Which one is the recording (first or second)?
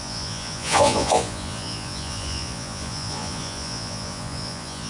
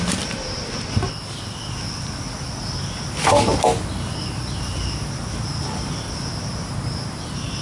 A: second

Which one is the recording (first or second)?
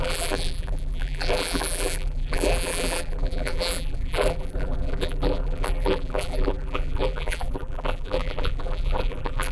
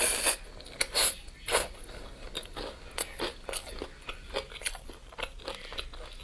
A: second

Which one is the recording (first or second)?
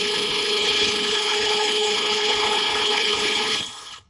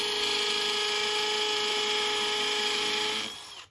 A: second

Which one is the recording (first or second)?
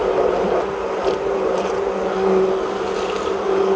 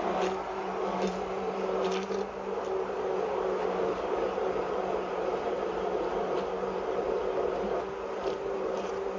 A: second